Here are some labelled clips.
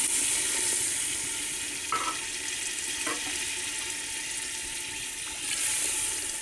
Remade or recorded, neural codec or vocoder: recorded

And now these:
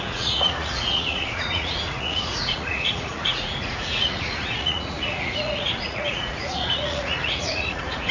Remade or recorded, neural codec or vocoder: remade, vocoder, Vocos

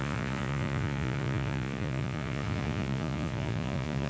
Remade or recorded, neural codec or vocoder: remade, vocoder, Vocos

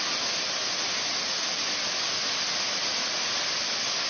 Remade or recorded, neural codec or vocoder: recorded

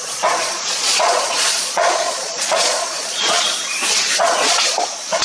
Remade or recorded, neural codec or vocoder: remade, vocoder, Vocos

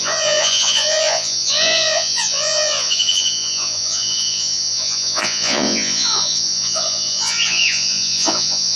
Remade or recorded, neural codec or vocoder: remade, vocoder, Vocos